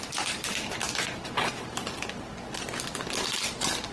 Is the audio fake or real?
real